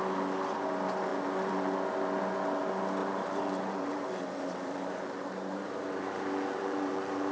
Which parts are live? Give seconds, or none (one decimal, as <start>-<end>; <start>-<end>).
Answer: 0.0-3.0